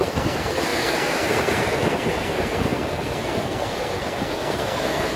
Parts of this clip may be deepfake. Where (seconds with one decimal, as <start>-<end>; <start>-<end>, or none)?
0.0-5.2